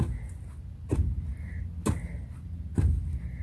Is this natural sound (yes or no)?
yes